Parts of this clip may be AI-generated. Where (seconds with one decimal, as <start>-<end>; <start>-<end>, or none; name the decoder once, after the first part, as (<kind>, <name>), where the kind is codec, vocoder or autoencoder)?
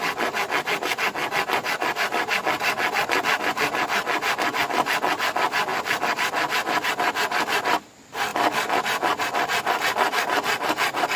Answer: none